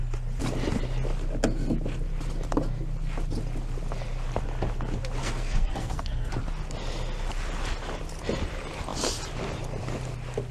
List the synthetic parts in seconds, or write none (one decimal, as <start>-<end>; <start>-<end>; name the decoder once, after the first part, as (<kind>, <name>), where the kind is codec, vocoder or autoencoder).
5.2-6.3 (codec, SNAC)

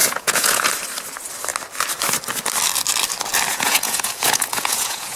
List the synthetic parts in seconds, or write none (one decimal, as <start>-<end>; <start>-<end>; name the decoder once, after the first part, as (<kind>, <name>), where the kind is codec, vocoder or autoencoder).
0.0-0.7 (vocoder, Vocos); 3.5-5.2

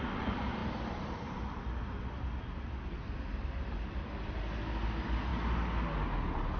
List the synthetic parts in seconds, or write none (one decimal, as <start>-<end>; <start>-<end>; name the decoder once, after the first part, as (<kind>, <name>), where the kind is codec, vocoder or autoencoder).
0.6-1.6 (vocoder, BigVGAN v2)

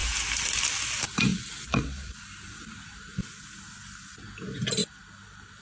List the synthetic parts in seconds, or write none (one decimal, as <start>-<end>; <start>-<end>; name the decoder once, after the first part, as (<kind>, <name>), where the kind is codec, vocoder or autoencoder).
1.3-2.2 (vocoder, Vocos)

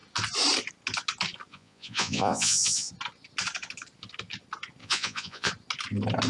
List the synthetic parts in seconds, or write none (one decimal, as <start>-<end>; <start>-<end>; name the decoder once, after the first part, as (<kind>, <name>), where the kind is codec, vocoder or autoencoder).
1.5-2.9 (vocoder, Vocos); 4.8-5.5